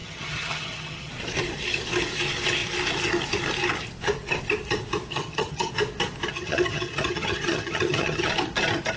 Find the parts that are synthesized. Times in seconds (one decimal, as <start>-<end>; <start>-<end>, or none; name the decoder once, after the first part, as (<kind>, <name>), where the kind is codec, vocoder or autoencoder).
0.0-1.1 (vocoder, HiFi-GAN); 5.1-5.7; 6.3-8.3